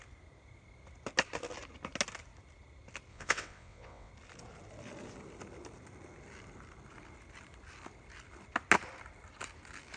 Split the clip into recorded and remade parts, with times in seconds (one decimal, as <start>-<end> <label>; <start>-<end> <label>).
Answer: 0.0-3.1 recorded; 3.1-4.1 remade; 4.1-10.0 recorded